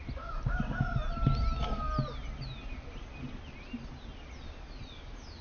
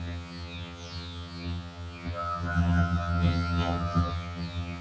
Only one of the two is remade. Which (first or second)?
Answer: second